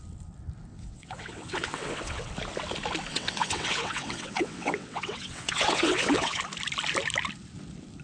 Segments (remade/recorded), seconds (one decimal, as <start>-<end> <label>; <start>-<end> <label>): 0.0-0.7 recorded; 0.7-2.3 remade; 2.3-3.1 recorded; 3.1-6.4 remade; 6.4-8.0 recorded